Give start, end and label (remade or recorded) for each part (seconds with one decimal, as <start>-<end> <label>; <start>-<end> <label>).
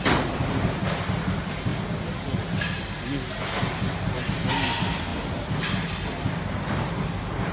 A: 0.0-7.5 recorded